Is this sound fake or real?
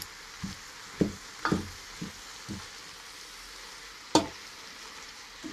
real